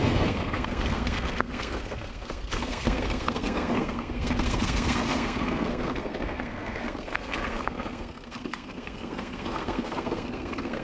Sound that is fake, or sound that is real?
fake